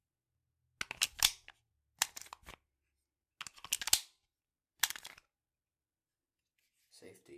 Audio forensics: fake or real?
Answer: real